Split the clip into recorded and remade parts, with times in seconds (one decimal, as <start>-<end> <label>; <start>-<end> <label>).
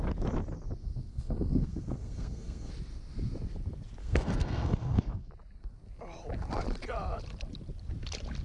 0.0-0.8 recorded; 0.8-2.7 remade; 2.7-4.0 recorded; 4.0-5.3 remade; 5.3-8.4 recorded